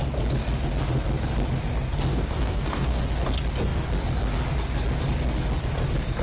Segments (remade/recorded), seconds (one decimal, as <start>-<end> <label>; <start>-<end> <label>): 0.0-2.1 recorded; 2.1-3.0 remade; 3.0-6.2 recorded